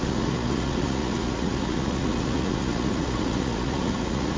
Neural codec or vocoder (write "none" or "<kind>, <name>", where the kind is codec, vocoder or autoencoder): vocoder, Vocos